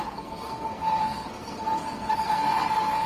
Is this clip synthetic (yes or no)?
yes